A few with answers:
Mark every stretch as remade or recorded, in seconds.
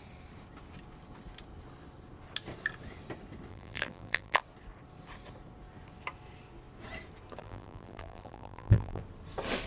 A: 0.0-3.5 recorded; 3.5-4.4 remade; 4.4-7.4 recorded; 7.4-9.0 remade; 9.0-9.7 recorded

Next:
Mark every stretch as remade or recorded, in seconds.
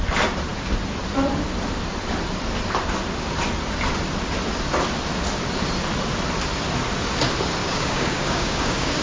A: 0.0-7.6 recorded; 7.6-9.0 remade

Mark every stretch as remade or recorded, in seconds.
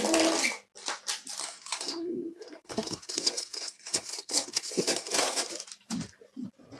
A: 0.0-1.4 recorded; 1.4-5.5 remade; 5.5-6.8 recorded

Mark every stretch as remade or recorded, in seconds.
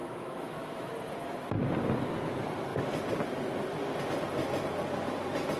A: 0.0-0.9 remade; 0.9-5.6 recorded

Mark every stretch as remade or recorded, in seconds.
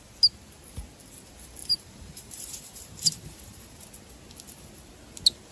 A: 0.0-1.6 recorded; 1.6-3.9 remade; 3.9-5.5 recorded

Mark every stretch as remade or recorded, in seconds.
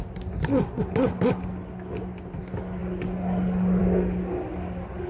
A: 0.0-5.1 recorded